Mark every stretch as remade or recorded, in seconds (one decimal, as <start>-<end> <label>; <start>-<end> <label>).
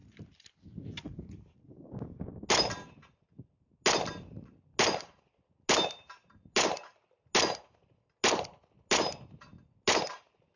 0.0-10.6 recorded